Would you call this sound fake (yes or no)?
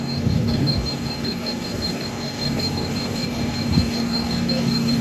yes